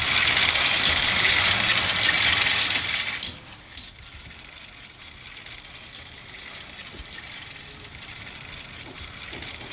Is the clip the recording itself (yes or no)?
yes